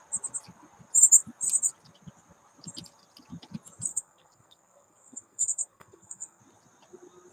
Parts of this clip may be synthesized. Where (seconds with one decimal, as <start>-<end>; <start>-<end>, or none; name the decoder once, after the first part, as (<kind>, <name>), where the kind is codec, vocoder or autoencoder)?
3.9-6.4 (codec, SNAC)